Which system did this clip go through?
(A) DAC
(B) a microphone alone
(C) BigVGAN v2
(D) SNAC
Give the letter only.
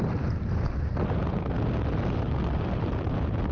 C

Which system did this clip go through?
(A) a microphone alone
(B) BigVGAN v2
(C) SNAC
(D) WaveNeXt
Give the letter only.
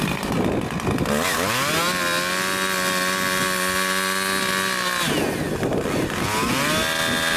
A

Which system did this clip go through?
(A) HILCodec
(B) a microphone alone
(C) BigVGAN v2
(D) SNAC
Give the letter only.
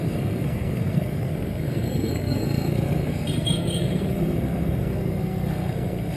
D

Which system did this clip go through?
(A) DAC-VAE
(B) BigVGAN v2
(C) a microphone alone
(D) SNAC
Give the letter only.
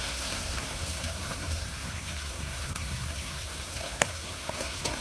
D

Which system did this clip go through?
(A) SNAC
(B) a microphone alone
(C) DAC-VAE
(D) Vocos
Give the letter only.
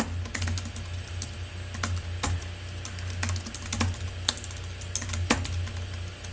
B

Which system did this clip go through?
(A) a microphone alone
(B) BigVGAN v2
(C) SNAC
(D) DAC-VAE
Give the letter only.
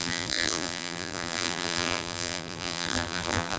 B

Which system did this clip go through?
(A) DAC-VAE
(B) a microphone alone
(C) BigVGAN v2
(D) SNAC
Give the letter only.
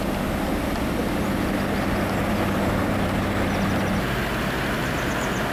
B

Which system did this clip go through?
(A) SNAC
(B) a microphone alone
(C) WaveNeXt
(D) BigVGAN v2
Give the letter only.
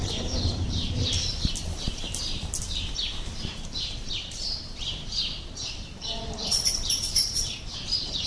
D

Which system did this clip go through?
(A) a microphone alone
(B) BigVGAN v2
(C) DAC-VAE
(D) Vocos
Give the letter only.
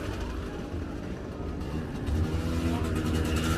A